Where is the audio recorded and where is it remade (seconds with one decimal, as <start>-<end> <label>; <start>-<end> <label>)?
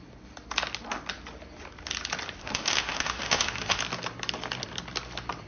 0.0-2.4 recorded; 2.4-3.8 remade; 3.8-5.5 recorded